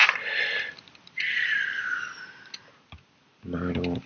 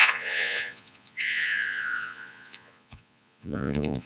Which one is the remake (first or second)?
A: second